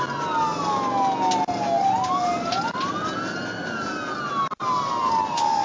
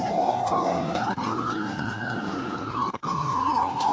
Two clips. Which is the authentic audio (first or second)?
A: first